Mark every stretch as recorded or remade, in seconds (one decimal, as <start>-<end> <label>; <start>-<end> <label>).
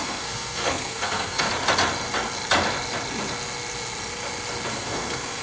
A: 0.0-1.5 remade; 1.5-4.7 recorded; 4.7-5.4 remade